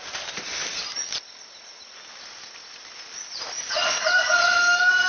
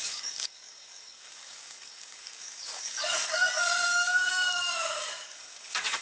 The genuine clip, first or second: first